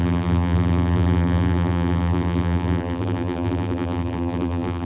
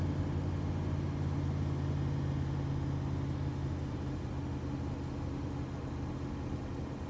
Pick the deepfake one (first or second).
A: first